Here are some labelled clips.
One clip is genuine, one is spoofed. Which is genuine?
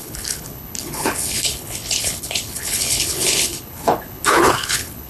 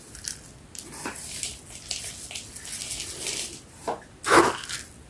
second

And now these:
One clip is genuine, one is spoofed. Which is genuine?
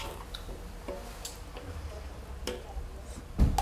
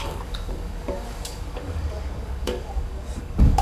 first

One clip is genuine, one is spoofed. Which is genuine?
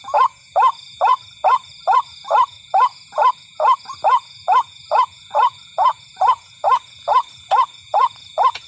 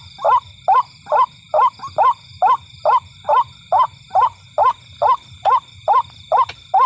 second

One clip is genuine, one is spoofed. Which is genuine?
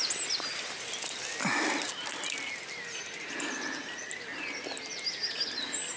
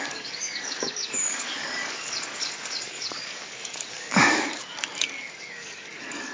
first